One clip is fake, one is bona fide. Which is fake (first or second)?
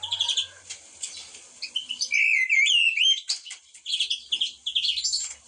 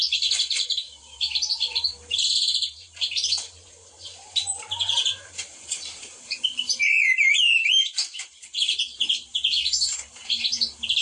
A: second